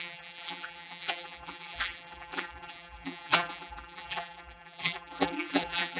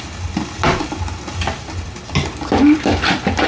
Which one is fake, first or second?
first